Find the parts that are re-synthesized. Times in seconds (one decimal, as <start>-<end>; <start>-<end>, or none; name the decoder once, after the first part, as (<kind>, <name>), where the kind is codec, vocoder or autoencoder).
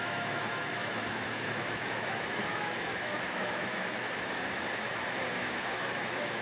0.0-6.4 (autoencoder, DAC-VAE)